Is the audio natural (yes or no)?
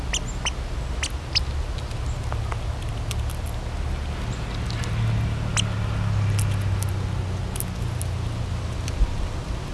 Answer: yes